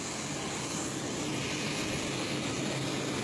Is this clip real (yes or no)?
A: yes